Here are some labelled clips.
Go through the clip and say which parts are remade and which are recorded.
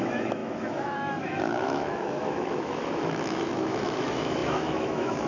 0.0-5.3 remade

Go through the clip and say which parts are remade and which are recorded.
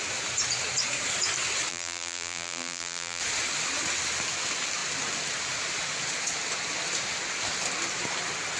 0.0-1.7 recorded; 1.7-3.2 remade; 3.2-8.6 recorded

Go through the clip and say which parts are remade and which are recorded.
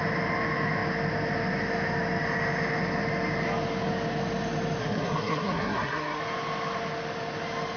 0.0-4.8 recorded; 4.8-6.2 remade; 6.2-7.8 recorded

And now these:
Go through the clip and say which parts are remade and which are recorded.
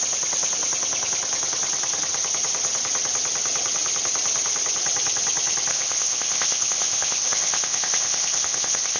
0.0-5.7 recorded; 5.7-9.0 remade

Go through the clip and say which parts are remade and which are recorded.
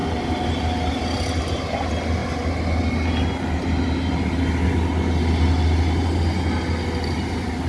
0.0-7.7 recorded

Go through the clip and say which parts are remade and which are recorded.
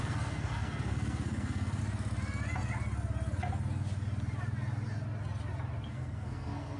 0.0-1.8 remade; 1.8-5.9 recorded; 5.9-6.8 remade